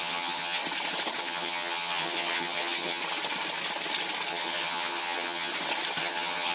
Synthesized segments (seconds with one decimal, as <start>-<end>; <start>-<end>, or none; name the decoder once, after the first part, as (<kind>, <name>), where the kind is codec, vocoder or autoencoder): 0.0-0.6 (vocoder, HiFi-GAN); 1.2-3.0; 4.3-5.5; 6.0-6.5